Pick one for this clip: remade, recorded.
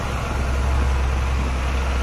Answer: recorded